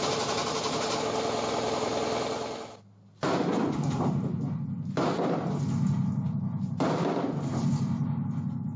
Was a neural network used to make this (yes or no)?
no